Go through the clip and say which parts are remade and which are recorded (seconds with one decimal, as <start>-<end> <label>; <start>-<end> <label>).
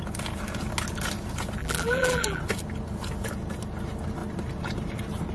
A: 0.0-1.6 recorded; 1.6-2.4 remade; 2.4-5.3 recorded